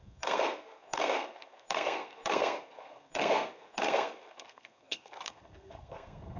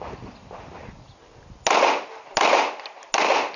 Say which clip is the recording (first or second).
second